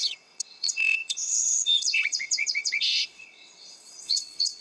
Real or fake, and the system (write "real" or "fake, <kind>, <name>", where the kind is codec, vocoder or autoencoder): fake, vocoder, WaveNeXt